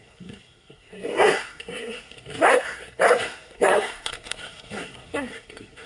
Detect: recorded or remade remade